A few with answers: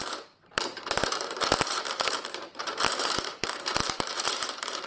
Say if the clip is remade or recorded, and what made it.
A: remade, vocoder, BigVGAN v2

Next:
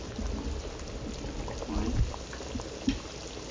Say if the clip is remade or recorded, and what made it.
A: recorded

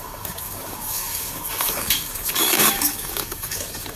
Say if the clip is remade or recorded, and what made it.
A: remade, codec, DAC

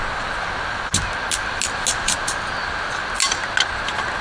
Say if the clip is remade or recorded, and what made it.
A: recorded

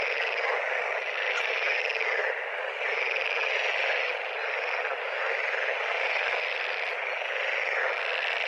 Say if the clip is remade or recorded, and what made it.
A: recorded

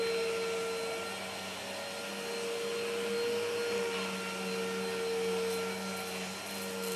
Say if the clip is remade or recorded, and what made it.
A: recorded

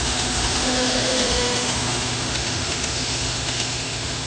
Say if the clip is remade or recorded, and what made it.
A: remade, autoencoder, DAC-VAE